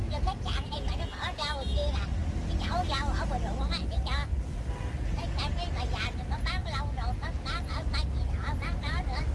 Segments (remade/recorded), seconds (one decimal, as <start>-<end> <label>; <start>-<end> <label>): 0.0-9.3 recorded